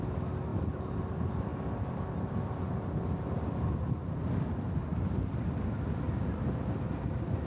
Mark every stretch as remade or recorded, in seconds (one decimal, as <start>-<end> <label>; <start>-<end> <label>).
0.0-7.5 recorded